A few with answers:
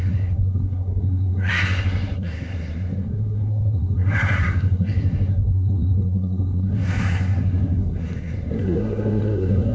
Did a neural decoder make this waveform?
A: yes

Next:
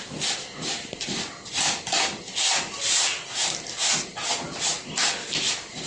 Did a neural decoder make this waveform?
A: no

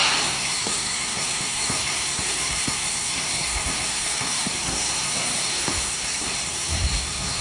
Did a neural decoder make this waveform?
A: yes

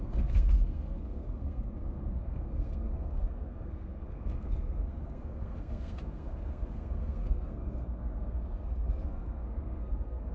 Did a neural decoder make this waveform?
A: yes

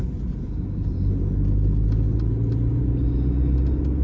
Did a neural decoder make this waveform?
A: no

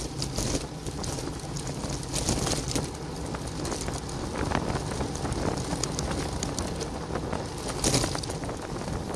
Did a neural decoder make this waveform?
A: no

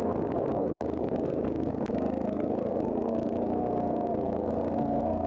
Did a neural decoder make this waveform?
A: yes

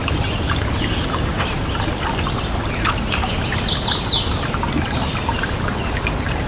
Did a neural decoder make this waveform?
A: no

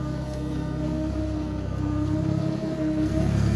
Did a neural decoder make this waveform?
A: yes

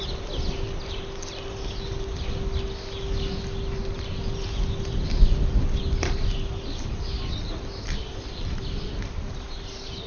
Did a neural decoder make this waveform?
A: no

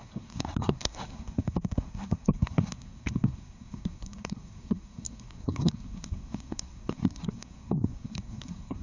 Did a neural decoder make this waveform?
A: yes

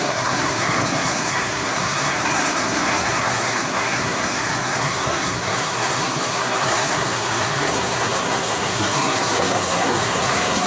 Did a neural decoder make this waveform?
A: yes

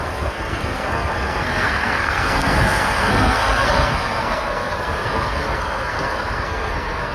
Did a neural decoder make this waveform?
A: yes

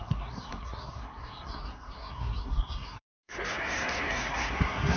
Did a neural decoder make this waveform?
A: yes